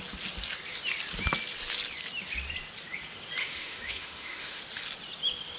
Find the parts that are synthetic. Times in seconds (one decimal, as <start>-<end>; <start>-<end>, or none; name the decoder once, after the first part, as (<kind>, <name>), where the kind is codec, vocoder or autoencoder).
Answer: 3.4-4.6 (autoencoder, DAC-VAE)